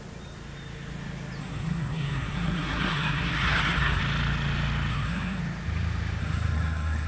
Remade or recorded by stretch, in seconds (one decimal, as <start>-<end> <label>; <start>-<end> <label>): 0.0-1.4 recorded; 1.4-4.0 remade; 4.0-4.9 recorded; 4.9-5.4 remade; 5.4-6.2 recorded; 6.2-7.1 remade

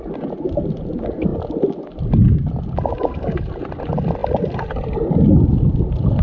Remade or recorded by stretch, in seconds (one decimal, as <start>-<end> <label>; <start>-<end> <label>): 0.0-6.2 recorded

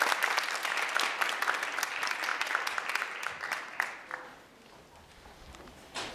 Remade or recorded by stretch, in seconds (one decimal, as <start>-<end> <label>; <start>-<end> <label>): 0.0-6.1 recorded

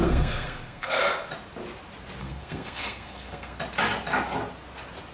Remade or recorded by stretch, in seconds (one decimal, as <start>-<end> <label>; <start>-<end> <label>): 0.0-1.0 remade; 1.0-2.2 recorded; 2.2-3.6 remade; 3.6-5.1 recorded

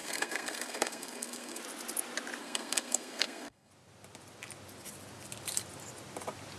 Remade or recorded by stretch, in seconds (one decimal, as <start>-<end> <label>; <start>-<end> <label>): 0.0-1.6 remade; 1.6-2.4 recorded; 2.4-3.7 remade; 3.7-6.6 recorded